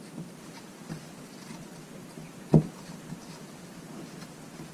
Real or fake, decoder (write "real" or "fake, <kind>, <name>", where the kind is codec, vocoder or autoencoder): real